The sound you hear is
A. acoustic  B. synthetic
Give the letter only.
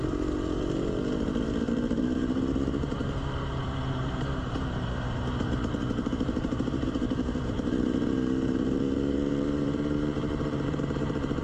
B